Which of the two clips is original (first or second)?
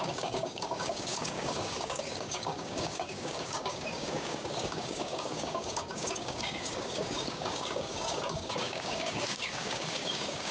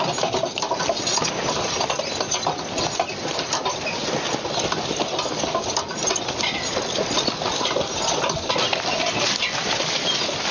second